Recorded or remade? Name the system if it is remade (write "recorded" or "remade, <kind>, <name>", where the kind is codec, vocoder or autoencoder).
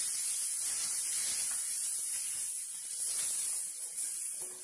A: recorded